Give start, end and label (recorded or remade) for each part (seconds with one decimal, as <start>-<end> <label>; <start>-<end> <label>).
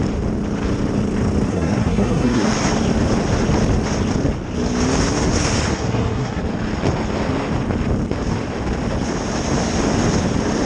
0.0-1.5 recorded; 1.5-2.5 remade; 2.5-5.7 recorded; 5.7-6.4 remade; 6.4-10.7 recorded